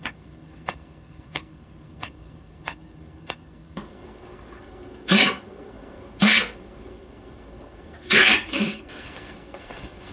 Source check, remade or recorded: remade